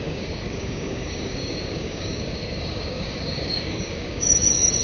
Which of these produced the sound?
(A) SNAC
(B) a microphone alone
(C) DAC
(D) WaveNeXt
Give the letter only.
C